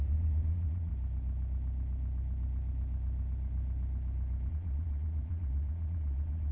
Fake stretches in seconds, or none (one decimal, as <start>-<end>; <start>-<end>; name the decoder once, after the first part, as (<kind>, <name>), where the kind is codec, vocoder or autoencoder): 0.0-0.9 (vocoder, Vocos); 4.5-6.5

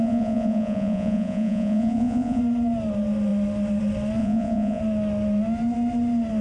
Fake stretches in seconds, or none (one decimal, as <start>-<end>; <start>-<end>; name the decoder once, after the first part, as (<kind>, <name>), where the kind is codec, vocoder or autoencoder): 0.0-2.4 (vocoder, Vocos); 4.2-4.8